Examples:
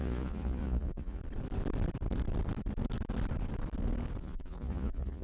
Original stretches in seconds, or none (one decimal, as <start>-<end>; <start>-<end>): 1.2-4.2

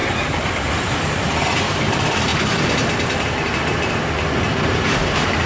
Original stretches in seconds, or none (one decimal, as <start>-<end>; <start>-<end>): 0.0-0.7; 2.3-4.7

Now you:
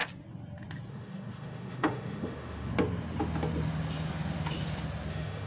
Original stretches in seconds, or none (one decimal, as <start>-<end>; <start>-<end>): 0.0-0.9; 2.7-5.1